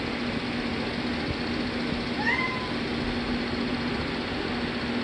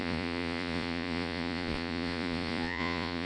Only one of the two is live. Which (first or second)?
first